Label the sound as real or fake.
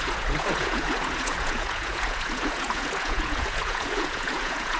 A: fake